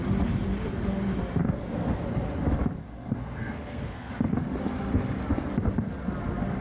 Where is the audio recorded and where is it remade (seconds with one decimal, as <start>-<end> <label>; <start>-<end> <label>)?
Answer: 0.0-1.4 recorded; 1.4-2.0 remade; 2.0-2.8 recorded; 2.8-4.1 remade; 4.1-6.6 recorded